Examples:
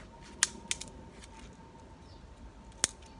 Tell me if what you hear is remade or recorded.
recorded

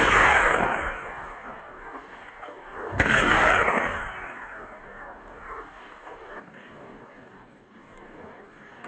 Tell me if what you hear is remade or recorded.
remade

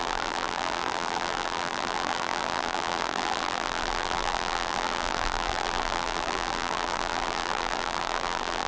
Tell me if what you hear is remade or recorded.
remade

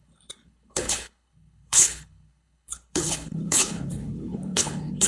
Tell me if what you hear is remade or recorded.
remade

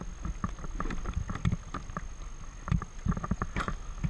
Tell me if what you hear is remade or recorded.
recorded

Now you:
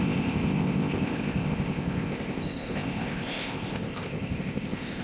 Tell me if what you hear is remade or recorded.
remade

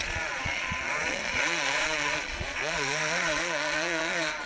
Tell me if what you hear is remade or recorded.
remade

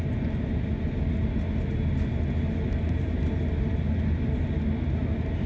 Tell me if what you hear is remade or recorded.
recorded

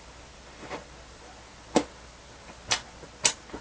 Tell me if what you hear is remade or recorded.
recorded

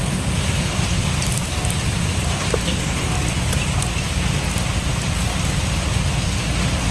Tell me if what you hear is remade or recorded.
recorded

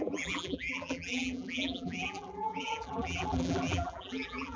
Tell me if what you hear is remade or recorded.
remade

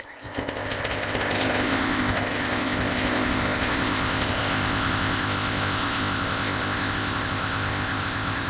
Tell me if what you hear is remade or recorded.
remade